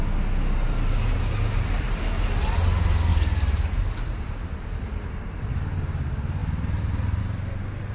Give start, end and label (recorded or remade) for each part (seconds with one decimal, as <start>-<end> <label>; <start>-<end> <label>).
0.0-3.1 recorded; 3.1-4.7 remade; 4.7-7.9 recorded